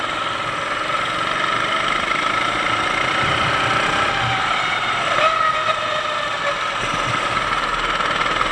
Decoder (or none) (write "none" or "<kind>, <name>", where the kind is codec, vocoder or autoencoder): none